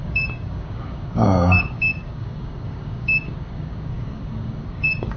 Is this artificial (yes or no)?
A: yes